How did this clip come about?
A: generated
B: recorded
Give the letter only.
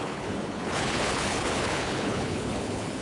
A